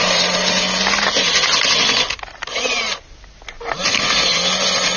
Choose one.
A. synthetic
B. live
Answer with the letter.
B